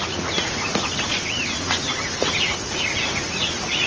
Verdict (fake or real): fake